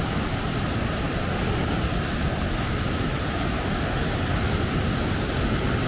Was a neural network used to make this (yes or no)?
no